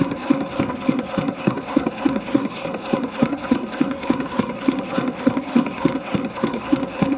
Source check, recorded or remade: remade